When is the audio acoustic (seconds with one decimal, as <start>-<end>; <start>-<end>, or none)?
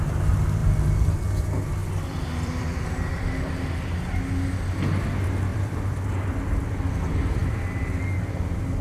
0.0-0.6; 1.1-1.8; 3.4-5.5; 6.8-8.8